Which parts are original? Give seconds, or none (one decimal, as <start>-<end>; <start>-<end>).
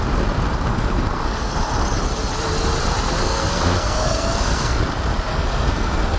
0.0-0.7; 1.5-3.2; 4.8-5.3